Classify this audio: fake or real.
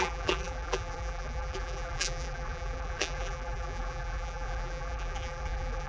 fake